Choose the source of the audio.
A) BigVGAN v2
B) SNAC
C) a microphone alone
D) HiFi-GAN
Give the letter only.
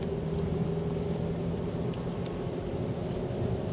C